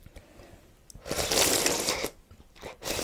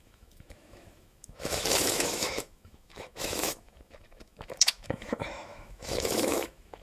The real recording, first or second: first